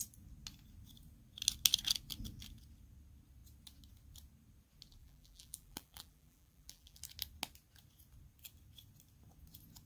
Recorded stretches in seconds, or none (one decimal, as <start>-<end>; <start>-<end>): 0.0-5.0; 7.0-9.9